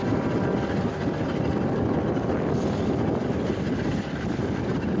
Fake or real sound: real